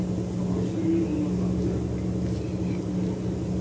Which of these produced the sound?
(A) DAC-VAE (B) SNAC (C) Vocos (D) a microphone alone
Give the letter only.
D